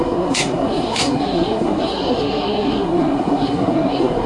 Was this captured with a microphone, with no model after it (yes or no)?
no